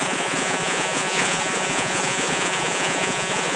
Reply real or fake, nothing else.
fake